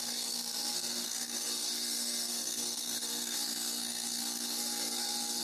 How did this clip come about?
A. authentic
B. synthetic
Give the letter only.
B